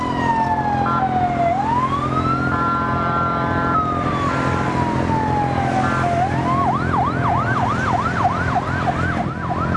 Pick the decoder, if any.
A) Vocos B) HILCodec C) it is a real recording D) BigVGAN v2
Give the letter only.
C